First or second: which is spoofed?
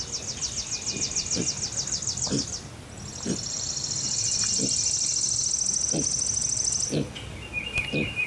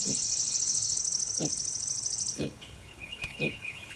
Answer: second